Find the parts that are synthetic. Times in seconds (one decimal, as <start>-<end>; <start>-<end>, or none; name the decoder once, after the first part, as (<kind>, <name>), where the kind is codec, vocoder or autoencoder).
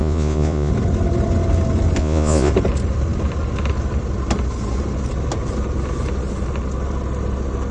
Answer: 0.0-0.7 (vocoder, Vocos); 2.0-2.5